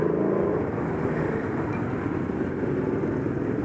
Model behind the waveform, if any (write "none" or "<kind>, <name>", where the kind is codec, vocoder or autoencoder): none